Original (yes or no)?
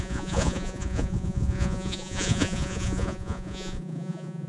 no